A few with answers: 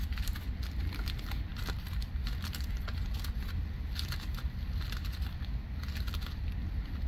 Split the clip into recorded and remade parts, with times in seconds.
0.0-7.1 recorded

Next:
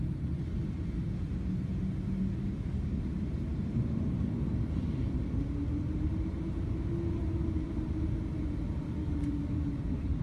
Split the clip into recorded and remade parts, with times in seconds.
0.0-2.4 recorded; 2.4-3.0 remade; 3.0-9.0 recorded; 9.0-10.2 remade

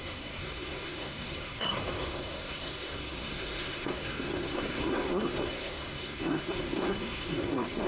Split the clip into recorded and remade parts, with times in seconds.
0.0-7.9 remade

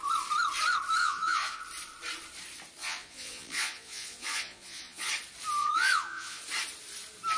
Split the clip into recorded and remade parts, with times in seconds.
0.0-1.0 recorded; 1.0-1.6 remade; 1.6-2.8 recorded; 2.8-5.1 remade; 5.1-5.6 recorded; 5.6-6.4 remade; 6.4-7.4 recorded

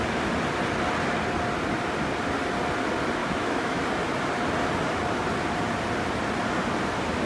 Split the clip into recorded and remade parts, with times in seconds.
0.0-3.2 recorded; 3.2-3.8 remade; 3.8-7.3 recorded

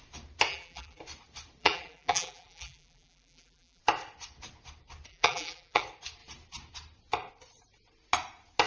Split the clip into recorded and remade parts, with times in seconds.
0.0-0.5 recorded; 0.5-1.0 remade; 1.0-1.6 recorded; 1.6-3.8 remade; 3.8-5.1 recorded; 5.1-5.8 remade; 5.8-8.7 recorded